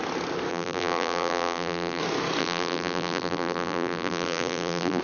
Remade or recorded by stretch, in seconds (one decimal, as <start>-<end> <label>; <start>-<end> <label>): 0.0-0.5 recorded; 0.5-2.0 remade; 2.0-2.4 recorded; 2.4-5.0 remade

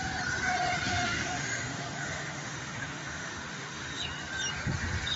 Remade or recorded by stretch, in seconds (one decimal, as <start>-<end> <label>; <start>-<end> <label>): 0.0-0.9 recorded; 0.9-4.0 remade; 4.0-5.2 recorded

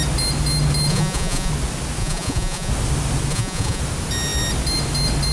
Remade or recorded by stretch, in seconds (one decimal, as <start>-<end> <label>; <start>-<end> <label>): 0.0-0.9 recorded; 0.9-1.5 remade; 1.5-2.0 recorded; 2.0-2.7 remade; 2.7-3.3 recorded; 3.3-3.8 remade; 3.8-5.3 recorded

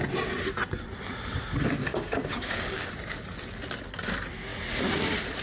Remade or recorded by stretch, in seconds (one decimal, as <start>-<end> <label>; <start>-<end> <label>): 0.0-1.8 recorded; 1.8-2.9 remade; 2.9-5.4 recorded

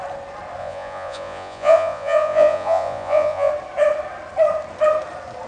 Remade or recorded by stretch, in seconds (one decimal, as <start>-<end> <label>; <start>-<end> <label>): 0.0-0.6 recorded; 0.6-3.5 remade; 3.5-5.5 recorded

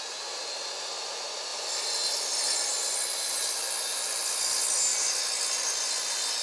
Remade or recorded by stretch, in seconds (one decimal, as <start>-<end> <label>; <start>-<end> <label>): 0.0-1.5 recorded; 1.5-2.7 remade; 2.7-4.9 recorded; 4.9-5.4 remade; 5.4-6.4 recorded

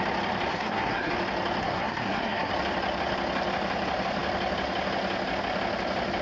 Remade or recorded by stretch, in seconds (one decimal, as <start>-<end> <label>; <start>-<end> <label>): 0.0-0.5 recorded; 0.5-1.1 remade; 1.1-1.6 recorded; 1.6-2.5 remade; 2.5-6.2 recorded